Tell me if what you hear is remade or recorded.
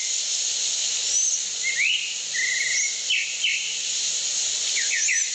recorded